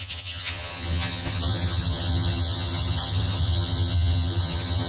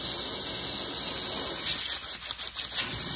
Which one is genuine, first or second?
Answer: second